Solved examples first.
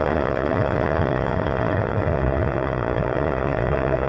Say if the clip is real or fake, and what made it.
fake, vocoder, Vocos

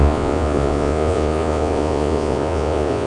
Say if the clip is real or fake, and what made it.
fake, vocoder, Vocos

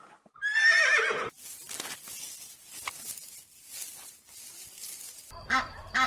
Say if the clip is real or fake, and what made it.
real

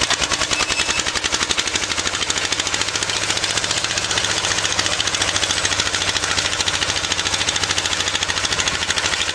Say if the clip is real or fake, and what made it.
fake, vocoder, Vocos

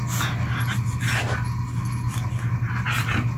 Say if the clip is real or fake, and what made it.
real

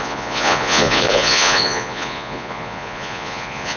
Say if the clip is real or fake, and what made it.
fake, vocoder, Vocos